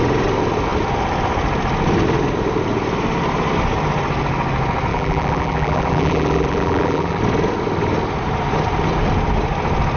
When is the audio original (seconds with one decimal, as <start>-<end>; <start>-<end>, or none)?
0.0-4.9; 7.2-10.0